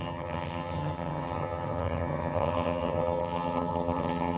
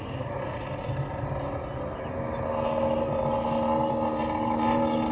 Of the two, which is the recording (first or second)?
second